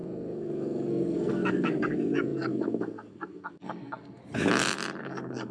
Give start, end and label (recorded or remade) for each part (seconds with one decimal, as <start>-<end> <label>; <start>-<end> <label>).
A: 0.0-4.2 remade; 4.2-5.0 recorded; 5.0-5.5 remade